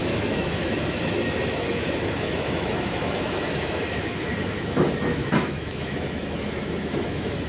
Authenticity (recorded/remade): remade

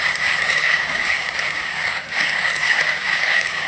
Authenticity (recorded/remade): remade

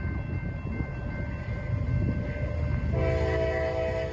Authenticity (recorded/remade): recorded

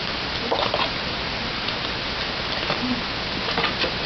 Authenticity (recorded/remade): recorded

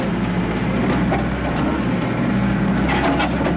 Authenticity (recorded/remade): recorded